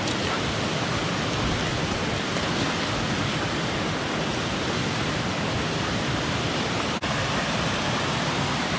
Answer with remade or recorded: recorded